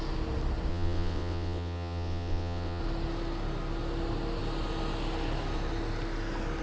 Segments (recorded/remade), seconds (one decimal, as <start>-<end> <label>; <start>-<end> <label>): 0.0-0.7 recorded; 0.7-2.8 remade; 2.8-6.6 recorded